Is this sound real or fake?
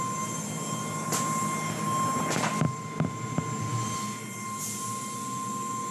real